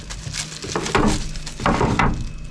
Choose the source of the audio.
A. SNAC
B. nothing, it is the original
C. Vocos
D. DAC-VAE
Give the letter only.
B